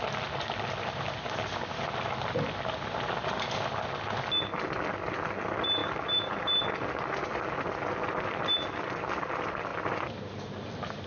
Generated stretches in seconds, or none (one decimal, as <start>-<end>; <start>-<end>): none